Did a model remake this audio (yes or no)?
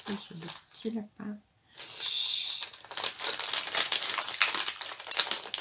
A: no